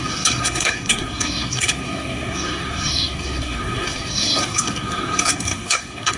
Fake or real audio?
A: fake